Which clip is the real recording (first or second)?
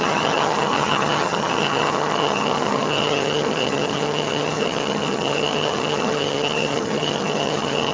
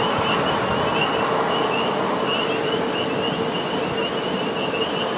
second